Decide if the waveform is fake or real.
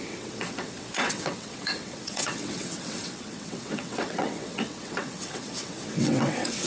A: fake